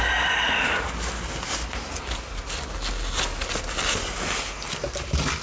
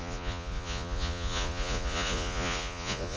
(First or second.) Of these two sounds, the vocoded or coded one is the second